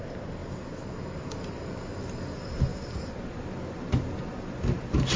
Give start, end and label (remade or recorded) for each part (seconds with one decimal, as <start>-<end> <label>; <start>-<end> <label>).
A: 0.0-5.2 recorded